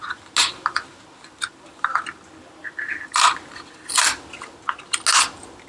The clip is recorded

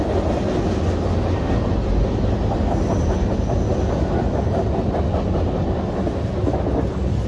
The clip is recorded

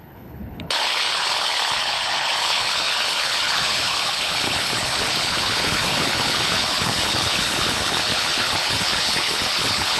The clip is remade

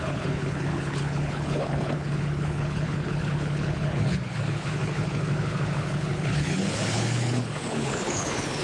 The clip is remade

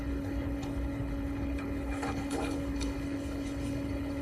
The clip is remade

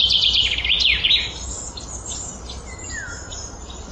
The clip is recorded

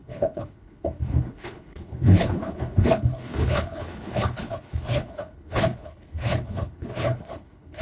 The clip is remade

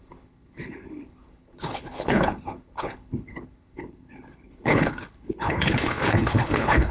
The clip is remade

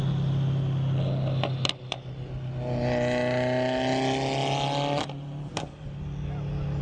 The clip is recorded